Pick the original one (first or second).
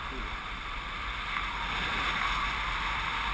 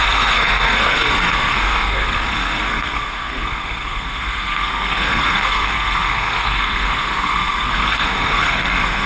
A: first